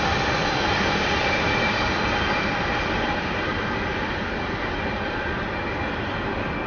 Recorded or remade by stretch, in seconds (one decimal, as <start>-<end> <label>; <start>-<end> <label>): 0.0-0.4 recorded; 0.4-1.8 remade; 1.8-3.9 recorded; 3.9-5.3 remade; 5.3-6.7 recorded